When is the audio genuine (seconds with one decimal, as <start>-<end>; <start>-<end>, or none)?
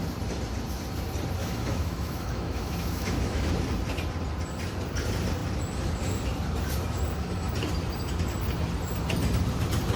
0.0-1.4; 3.5-10.0